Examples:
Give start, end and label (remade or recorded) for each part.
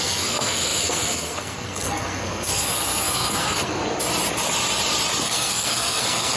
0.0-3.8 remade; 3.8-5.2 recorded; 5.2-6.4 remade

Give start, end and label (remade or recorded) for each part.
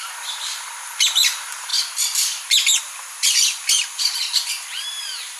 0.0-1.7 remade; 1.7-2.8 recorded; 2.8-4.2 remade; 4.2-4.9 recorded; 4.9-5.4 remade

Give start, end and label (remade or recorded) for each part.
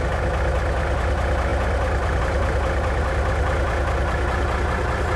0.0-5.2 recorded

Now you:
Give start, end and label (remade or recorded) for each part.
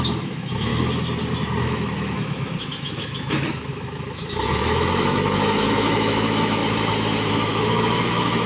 0.0-0.7 remade; 0.7-1.6 recorded; 1.6-6.6 remade; 6.6-7.3 recorded; 7.3-8.5 remade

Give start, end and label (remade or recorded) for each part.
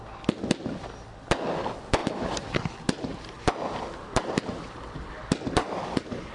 0.0-5.6 recorded; 5.6-6.3 remade